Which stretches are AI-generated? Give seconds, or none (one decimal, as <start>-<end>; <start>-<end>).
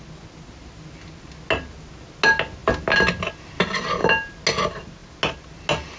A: none